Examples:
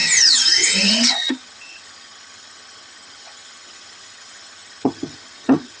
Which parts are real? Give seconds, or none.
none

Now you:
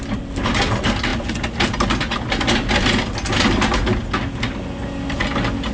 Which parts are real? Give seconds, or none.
0.0-5.7